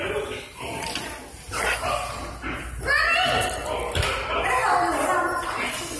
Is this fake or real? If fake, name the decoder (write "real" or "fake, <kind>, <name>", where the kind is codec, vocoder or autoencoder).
real